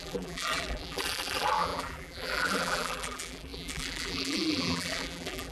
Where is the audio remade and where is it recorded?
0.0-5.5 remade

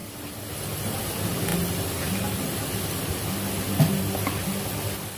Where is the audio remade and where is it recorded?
0.0-0.5 remade; 0.5-5.2 recorded

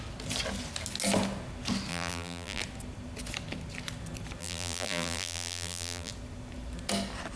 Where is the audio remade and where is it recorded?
0.0-1.9 recorded; 1.9-2.6 remade; 2.6-4.4 recorded; 4.4-6.1 remade; 6.1-7.4 recorded